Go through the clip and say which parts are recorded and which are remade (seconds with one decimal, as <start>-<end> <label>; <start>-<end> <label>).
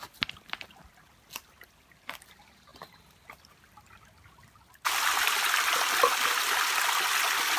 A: 0.0-7.6 recorded